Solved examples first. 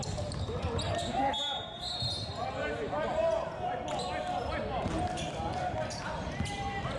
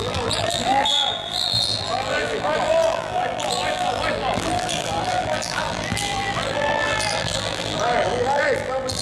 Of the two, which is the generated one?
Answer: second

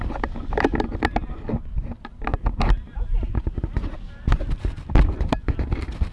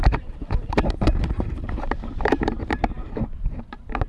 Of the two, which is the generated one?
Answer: second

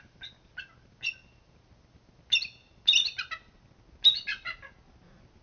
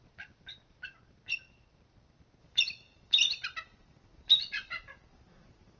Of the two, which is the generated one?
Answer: second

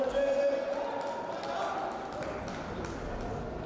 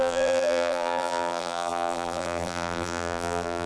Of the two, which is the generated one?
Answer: second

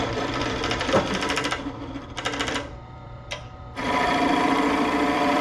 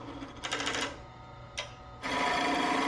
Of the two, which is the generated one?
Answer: first